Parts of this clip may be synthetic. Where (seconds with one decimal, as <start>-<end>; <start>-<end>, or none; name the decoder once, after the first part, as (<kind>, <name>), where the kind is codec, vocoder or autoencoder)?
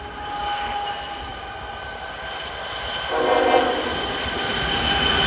none